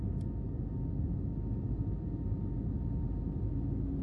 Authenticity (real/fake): real